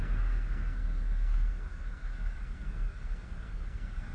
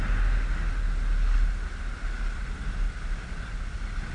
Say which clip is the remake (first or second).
first